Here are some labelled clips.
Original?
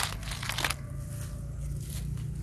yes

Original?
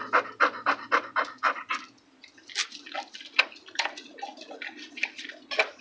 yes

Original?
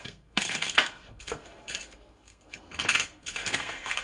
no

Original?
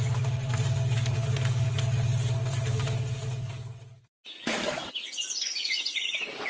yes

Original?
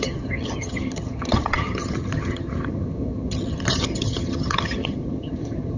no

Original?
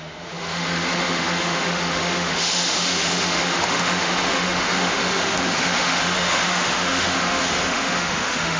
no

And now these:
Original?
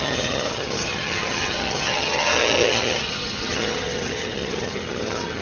no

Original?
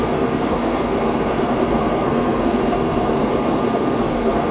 no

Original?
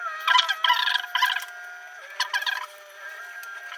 yes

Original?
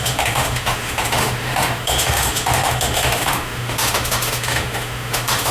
no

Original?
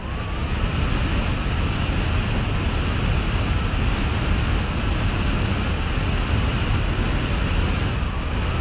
yes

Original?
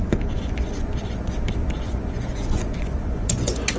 no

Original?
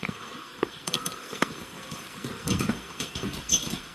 no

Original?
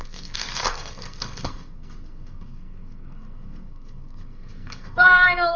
no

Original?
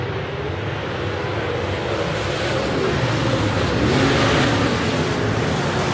yes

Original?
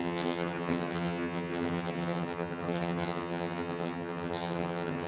no